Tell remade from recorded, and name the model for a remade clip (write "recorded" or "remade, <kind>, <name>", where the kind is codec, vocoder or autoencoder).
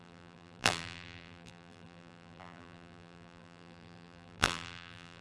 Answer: remade, vocoder, BigVGAN v2